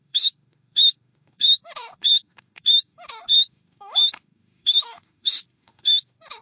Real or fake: fake